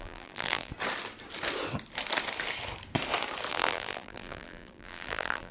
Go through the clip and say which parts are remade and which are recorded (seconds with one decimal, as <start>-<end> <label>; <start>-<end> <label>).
0.0-0.7 remade; 0.7-3.5 recorded; 3.5-5.5 remade

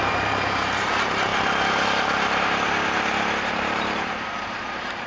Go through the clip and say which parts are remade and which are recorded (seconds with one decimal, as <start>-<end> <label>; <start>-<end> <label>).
0.0-1.3 remade; 1.3-3.4 recorded; 3.4-5.1 remade

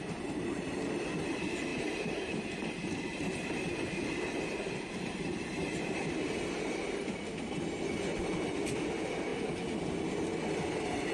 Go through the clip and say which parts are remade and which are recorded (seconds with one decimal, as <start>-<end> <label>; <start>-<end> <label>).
0.0-0.7 remade; 0.7-1.7 recorded; 1.7-6.3 remade; 6.3-11.1 recorded

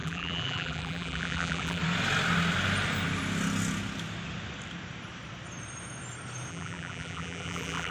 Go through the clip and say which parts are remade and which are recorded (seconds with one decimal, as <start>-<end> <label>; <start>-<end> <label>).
0.0-1.8 remade; 1.8-6.5 recorded; 6.5-7.9 remade

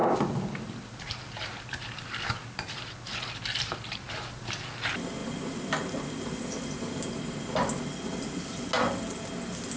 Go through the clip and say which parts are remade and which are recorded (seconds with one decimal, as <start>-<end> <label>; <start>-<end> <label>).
0.0-4.1 remade; 4.1-5.2 recorded; 5.2-8.6 remade; 8.6-9.8 recorded

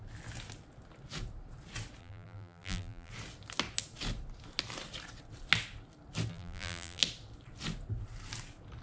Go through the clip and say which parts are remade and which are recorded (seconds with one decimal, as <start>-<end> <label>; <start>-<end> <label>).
0.0-2.0 recorded; 2.0-3.1 remade; 3.1-6.3 recorded; 6.3-7.0 remade; 7.0-8.8 recorded